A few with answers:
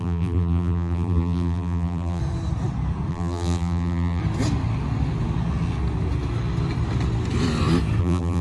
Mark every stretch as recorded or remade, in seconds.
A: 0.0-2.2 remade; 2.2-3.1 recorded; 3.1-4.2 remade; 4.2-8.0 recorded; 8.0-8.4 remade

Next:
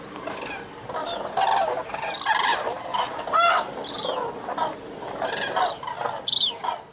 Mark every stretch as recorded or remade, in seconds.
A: 0.0-2.9 recorded; 2.9-3.8 remade; 3.8-6.9 recorded